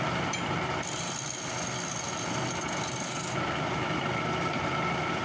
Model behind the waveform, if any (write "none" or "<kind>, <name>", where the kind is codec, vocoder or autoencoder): none